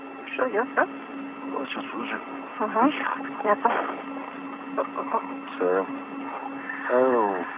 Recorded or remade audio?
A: recorded